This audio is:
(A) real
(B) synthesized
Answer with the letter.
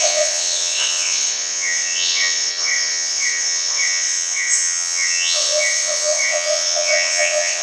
B